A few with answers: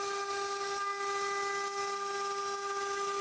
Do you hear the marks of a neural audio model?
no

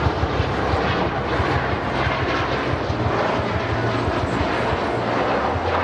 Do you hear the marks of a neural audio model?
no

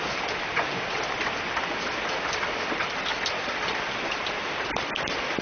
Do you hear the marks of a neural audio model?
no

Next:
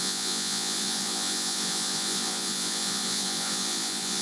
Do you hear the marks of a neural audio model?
yes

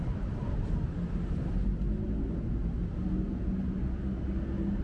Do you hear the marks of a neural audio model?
no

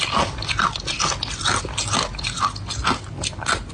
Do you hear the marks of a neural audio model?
no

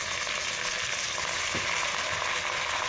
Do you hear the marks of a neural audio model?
no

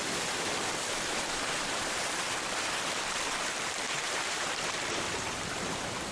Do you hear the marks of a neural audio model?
yes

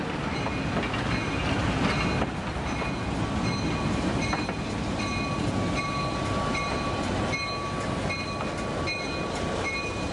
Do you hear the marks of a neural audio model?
no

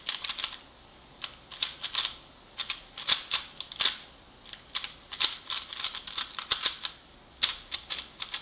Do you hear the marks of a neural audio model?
no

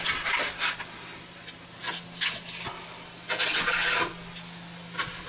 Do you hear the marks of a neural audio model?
no